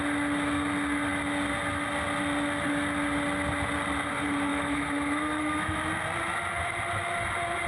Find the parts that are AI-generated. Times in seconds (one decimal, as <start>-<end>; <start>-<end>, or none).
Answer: 4.5-5.8